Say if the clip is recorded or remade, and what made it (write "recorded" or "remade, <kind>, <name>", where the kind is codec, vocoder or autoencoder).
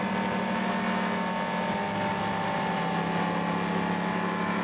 recorded